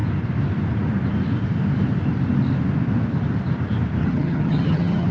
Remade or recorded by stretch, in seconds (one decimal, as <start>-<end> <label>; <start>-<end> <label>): 0.0-4.0 recorded; 4.0-5.1 remade